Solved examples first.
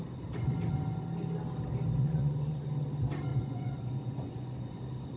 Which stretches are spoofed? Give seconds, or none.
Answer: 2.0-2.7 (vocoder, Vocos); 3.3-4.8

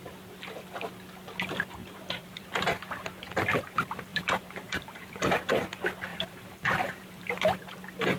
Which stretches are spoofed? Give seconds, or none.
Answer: 1.8-2.4 (vocoder, BigVGAN v2); 4.1-5.2; 6.1-7.4

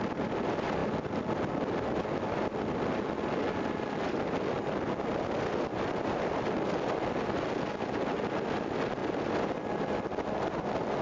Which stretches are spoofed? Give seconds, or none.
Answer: none

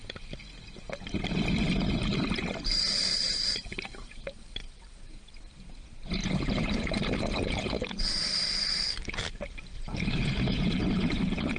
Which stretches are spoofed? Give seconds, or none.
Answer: 0.0-0.4 (vocoder, BigVGAN v2); 2.1-11.6

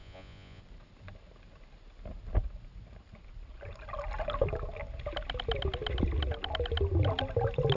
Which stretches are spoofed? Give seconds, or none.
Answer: 0.0-0.6 (vocoder, Vocos)

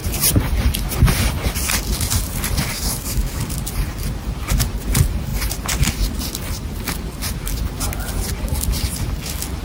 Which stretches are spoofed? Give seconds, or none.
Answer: 2.7-3.4 (codec, DAC)